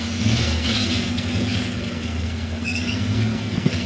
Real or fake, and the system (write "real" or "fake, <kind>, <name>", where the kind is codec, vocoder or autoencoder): fake, codec, SNAC